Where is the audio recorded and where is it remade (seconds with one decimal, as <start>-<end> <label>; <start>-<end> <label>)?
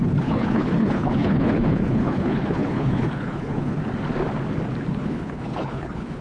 0.0-3.8 remade; 3.8-4.9 recorded; 4.9-6.2 remade